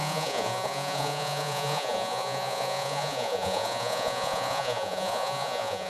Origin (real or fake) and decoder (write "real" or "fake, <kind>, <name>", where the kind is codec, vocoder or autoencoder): fake, vocoder, Vocos